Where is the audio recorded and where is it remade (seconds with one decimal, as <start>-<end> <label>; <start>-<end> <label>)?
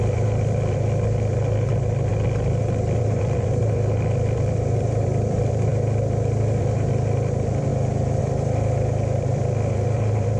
0.0-2.1 remade; 2.1-3.0 recorded; 3.0-5.7 remade; 5.7-6.6 recorded; 6.6-7.7 remade; 7.7-8.2 recorded; 8.2-10.4 remade